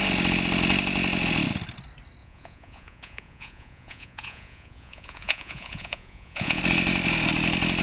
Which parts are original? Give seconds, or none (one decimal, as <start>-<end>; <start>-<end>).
0.0-2.2; 6.6-7.8